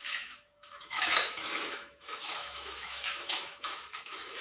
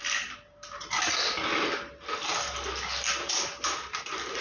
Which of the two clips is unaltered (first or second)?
second